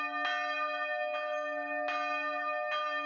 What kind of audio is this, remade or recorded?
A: recorded